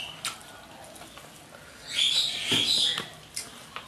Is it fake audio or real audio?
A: real